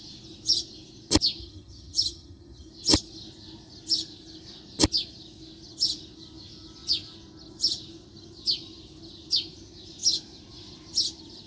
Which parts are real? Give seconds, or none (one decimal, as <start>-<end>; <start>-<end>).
0.0-1.4; 2.7-11.5